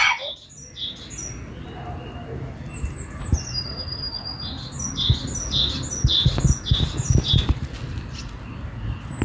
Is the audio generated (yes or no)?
no